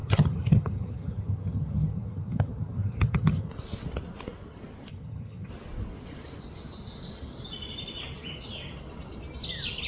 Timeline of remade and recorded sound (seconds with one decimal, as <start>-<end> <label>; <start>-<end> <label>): 0.0-3.5 remade; 3.5-4.9 recorded; 4.9-5.5 remade; 5.5-9.9 recorded